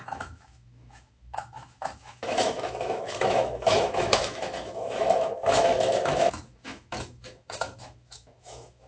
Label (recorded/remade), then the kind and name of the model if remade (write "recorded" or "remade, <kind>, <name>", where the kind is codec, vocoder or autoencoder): remade, autoencoder, DAC-VAE